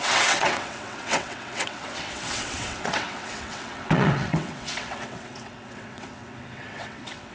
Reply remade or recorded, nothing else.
remade